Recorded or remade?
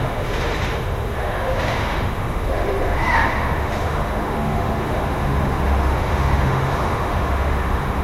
remade